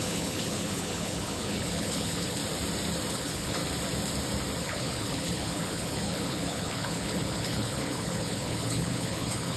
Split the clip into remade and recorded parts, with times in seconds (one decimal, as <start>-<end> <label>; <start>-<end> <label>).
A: 0.0-2.4 remade; 2.4-3.1 recorded; 3.1-3.6 remade; 3.6-4.6 recorded; 4.6-9.6 remade